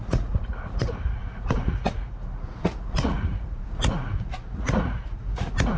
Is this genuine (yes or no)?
no